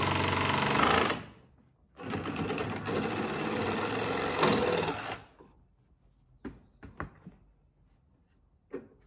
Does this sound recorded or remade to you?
recorded